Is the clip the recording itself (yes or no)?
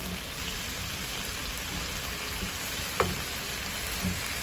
yes